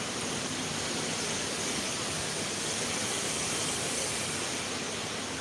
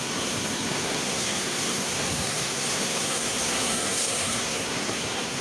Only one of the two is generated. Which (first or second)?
second